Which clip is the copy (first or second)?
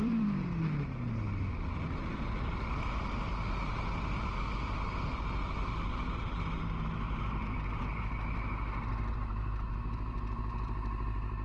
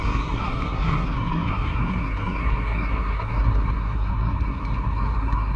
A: second